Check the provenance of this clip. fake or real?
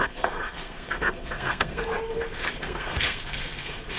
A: fake